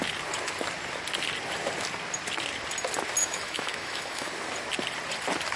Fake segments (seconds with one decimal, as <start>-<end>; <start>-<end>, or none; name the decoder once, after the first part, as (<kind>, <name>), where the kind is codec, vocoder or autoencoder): 3.2-4.3 (autoencoder, DAC-VAE)

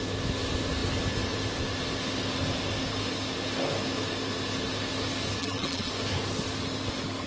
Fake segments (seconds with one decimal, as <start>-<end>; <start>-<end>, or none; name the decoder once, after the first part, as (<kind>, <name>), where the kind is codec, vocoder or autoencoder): 5.4-5.9 (vocoder, BigVGAN v2)

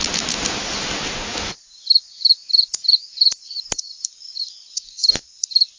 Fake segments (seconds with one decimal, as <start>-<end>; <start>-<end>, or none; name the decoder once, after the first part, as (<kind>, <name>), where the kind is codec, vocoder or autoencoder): none